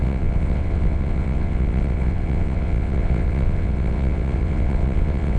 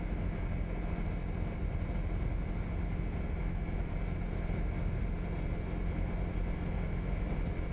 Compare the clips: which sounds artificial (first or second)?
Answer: first